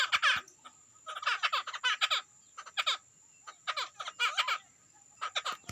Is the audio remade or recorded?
recorded